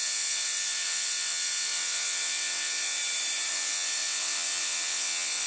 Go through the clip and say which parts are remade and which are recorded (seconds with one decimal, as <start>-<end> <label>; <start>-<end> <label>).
0.0-3.0 remade; 3.0-3.5 recorded; 3.5-5.5 remade